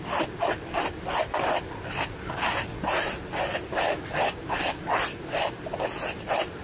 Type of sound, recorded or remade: recorded